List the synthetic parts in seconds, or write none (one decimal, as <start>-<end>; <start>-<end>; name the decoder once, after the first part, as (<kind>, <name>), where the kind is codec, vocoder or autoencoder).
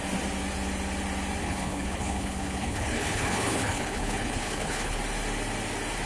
1.4-5.0 (codec, HILCodec)